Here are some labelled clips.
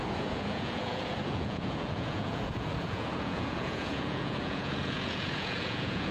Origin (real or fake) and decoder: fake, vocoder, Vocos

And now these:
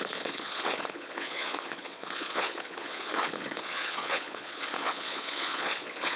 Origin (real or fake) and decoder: fake, vocoder, Vocos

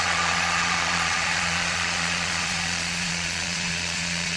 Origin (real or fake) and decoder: fake, vocoder, Vocos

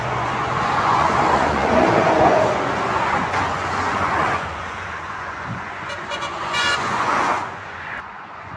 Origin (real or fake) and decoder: fake, vocoder, Vocos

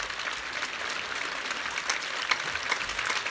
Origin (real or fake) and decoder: real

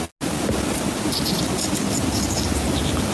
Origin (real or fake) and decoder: real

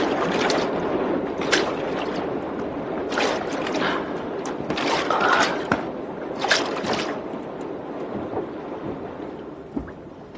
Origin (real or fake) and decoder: real